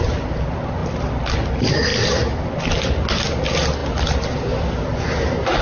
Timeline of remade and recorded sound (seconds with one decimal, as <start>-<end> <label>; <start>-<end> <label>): 0.0-5.6 recorded